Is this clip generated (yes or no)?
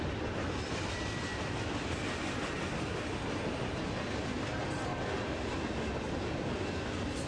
no